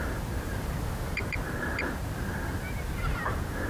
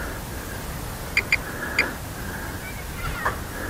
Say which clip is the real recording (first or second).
second